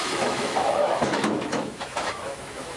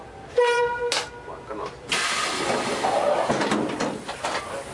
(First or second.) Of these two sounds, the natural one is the second